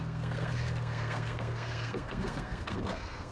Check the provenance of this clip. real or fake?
fake